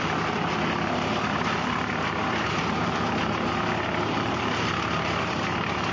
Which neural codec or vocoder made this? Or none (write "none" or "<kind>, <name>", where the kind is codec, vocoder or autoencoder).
vocoder, BigVGAN v2